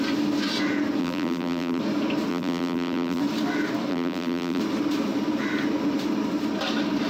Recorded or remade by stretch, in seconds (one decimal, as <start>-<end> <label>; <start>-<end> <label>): 0.0-1.0 recorded; 1.0-1.8 remade; 1.8-2.3 recorded; 2.3-3.2 remade; 3.2-3.9 recorded; 3.9-4.6 remade; 4.6-7.1 recorded